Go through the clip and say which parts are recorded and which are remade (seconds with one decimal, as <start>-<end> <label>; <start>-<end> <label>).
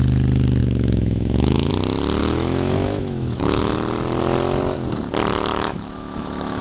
0.0-0.6 recorded; 0.6-1.7 remade; 1.7-2.2 recorded; 2.2-3.6 remade; 3.6-5.5 recorded; 5.5-6.6 remade